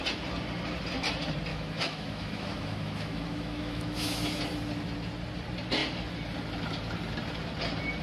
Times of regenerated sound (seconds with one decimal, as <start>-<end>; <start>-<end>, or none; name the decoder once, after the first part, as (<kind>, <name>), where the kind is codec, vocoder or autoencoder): 1.5-4.4 (autoencoder, DAC-VAE)